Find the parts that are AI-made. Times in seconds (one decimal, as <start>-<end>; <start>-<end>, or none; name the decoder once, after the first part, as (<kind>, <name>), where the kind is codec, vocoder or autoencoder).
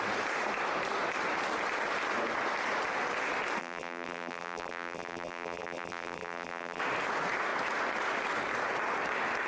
3.6-6.8 (vocoder, BigVGAN v2)